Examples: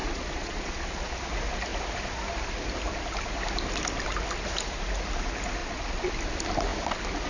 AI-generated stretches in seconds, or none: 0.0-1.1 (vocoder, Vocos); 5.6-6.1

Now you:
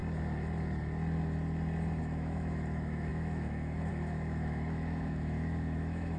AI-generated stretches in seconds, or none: 2.0-6.2 (autoencoder, DAC-VAE)

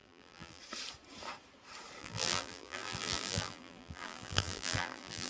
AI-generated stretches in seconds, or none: 0.0-0.6 (vocoder, BigVGAN v2); 2.0-5.3

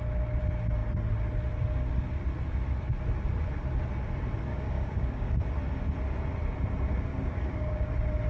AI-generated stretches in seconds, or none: 4.5-5.3 (codec, DAC); 7.1-7.9

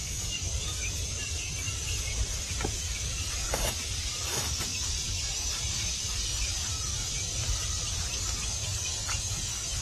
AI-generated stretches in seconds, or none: 0.0-2.1 (codec, DAC); 2.7-7.4; 8.1-9.8

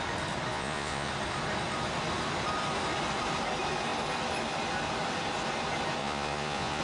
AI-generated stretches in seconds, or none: 0.5-1.1 (vocoder, Vocos); 6.0-6.8

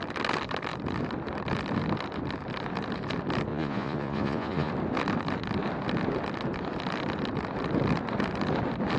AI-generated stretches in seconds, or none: 3.5-4.7 (vocoder, Vocos)

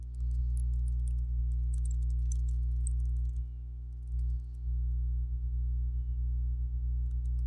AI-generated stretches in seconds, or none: none